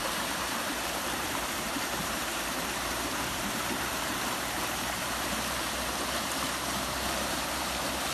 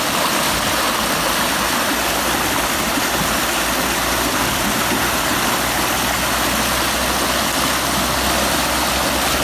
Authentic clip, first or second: second